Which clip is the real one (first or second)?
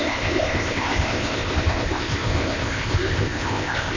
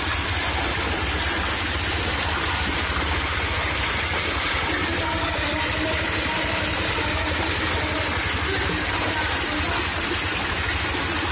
second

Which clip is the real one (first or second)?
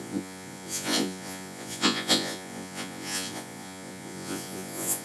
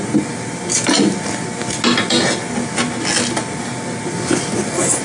second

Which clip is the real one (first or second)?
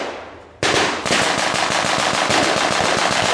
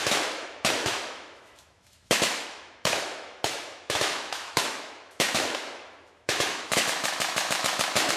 first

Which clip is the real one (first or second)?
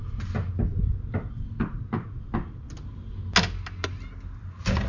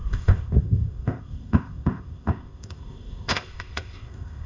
first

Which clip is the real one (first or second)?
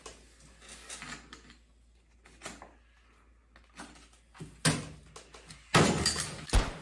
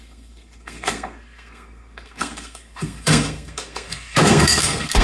first